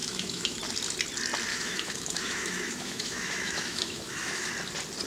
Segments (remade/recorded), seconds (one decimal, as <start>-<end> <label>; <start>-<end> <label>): 0.0-0.6 remade; 0.6-1.5 recorded; 1.5-4.5 remade; 4.5-5.1 recorded